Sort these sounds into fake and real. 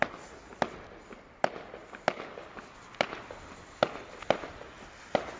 real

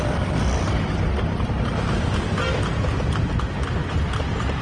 real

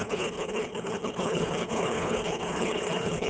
fake